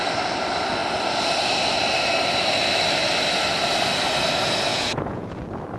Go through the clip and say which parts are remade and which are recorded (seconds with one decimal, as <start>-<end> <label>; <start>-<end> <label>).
0.0-4.7 recorded; 4.7-5.3 remade; 5.3-5.8 recorded